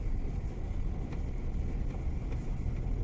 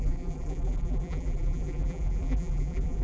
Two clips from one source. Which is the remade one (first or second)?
second